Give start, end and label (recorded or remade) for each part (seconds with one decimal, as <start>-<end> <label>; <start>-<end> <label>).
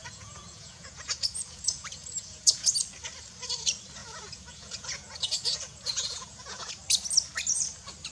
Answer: 0.0-2.7 remade; 2.7-4.0 recorded; 4.0-6.7 remade; 6.7-8.1 recorded